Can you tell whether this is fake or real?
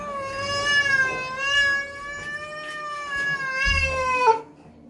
real